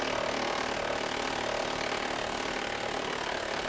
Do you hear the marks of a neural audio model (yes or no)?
yes